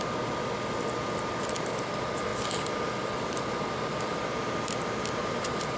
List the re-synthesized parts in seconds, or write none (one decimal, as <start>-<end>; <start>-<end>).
2.3-5.8